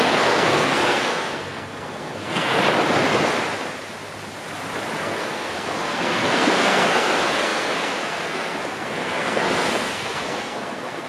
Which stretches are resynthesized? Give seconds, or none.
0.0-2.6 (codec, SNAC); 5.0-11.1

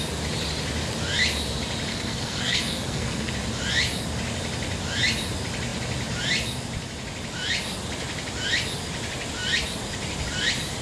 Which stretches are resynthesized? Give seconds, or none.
1.9-3.3 (codec, SNAC)

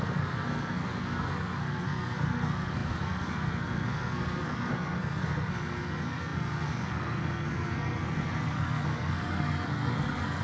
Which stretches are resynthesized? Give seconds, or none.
0.0-10.4 (codec, SNAC)